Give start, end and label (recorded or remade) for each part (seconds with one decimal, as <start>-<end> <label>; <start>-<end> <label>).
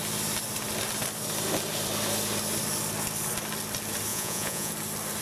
0.0-4.1 recorded; 4.1-4.7 remade; 4.7-5.2 recorded